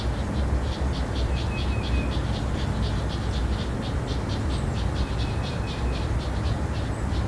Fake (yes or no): no